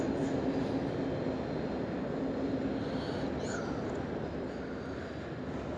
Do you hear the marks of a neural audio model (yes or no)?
no